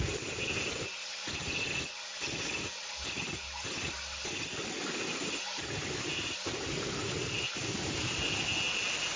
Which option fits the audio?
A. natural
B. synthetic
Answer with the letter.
A